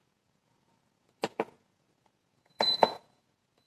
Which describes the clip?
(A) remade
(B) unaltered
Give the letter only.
A